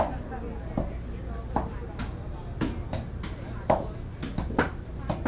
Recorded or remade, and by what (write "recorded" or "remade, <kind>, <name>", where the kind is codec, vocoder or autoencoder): recorded